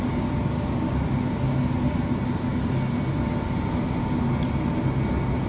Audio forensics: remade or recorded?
recorded